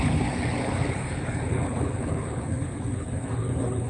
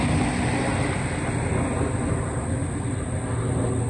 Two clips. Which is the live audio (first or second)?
second